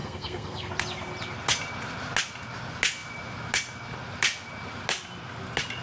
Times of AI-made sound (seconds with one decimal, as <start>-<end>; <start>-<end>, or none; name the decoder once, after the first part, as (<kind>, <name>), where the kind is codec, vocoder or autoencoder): 0.0-0.7 (codec, SNAC)